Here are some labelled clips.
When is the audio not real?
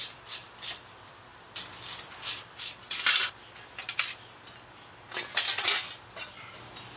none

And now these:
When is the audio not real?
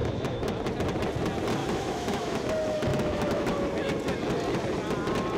0.0-0.6 (autoencoder, DAC-VAE); 1.6-2.4; 2.9-3.6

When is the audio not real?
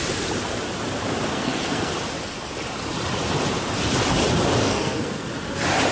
1.3-1.9 (codec, SNAC); 4.6-5.3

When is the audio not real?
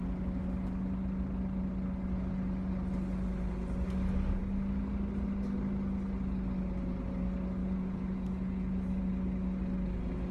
7.6-9.0 (vocoder, Vocos)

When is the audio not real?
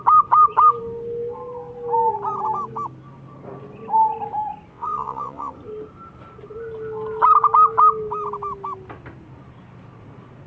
4.7-5.5 (vocoder, WaveNeXt)